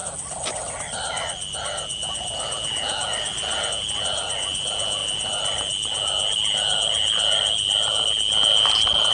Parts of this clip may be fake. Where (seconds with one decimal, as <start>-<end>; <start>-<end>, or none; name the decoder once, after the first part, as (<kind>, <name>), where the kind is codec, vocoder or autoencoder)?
none